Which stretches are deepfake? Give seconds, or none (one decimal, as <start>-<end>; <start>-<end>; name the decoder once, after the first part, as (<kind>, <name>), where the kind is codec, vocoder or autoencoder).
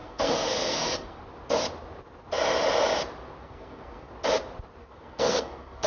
0.0-1.2 (codec, SNAC); 3.4-4.1; 4.8-5.9